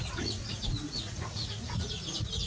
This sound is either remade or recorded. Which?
remade